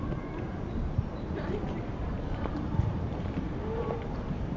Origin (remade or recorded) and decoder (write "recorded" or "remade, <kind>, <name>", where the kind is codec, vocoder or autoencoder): remade, vocoder, BigVGAN v2